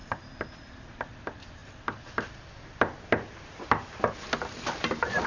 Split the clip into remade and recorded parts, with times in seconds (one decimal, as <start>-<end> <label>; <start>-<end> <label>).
0.0-1.1 recorded; 1.1-1.6 remade; 1.6-4.8 recorded; 4.8-5.3 remade